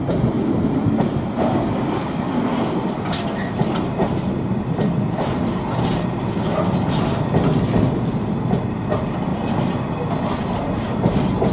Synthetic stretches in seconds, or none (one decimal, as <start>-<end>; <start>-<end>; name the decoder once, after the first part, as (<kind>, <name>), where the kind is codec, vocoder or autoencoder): none